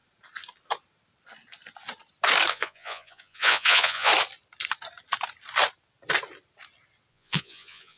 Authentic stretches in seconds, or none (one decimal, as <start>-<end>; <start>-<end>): 0.0-2.5; 4.1-7.1